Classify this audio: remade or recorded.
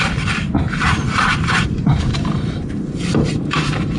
remade